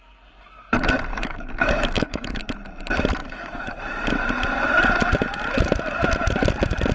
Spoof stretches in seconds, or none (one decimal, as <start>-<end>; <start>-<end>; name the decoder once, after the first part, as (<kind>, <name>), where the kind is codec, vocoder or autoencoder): 1.1-2.4 (codec, DAC); 3.2-3.8

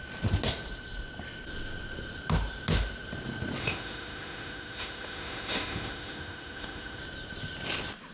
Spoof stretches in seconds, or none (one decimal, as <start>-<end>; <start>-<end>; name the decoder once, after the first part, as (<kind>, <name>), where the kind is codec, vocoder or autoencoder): 3.6-7.0 (autoencoder, DAC-VAE)

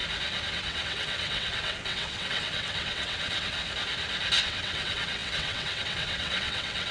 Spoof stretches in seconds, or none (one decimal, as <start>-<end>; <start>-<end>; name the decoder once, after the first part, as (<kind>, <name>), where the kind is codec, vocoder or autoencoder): 0.5-3.6 (vocoder, WaveNeXt); 4.4-6.9

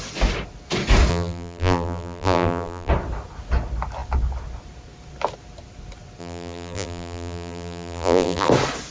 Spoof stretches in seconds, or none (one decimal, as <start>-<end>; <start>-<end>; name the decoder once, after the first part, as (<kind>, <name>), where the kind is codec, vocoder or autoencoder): 1.1-2.9 (vocoder, BigVGAN v2); 6.2-8.5